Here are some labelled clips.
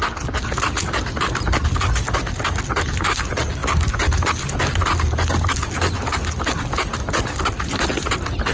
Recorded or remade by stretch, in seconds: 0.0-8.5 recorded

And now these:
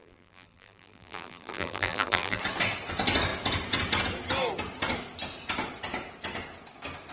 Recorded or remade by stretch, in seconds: 0.0-2.4 remade; 2.4-7.1 recorded

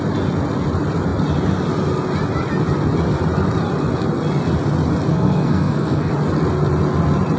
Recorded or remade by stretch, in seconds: 0.0-5.1 recorded; 5.1-6.1 remade; 6.1-7.4 recorded